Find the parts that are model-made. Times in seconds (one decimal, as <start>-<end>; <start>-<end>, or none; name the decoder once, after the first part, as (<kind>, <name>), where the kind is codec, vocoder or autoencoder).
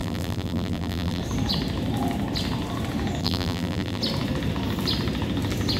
0.0-1.2 (vocoder, BigVGAN v2); 3.2-4.0